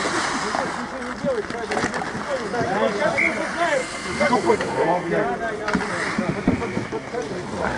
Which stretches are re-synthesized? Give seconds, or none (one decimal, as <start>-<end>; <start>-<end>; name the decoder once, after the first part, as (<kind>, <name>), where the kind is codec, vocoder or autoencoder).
3.8-5.1 (codec, SNAC)